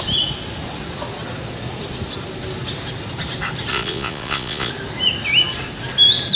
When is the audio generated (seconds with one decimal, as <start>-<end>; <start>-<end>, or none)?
3.7-4.7